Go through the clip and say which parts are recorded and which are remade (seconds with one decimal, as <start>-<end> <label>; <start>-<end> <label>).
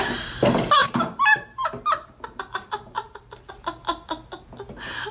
0.0-0.8 recorded; 0.8-3.5 remade; 3.5-5.1 recorded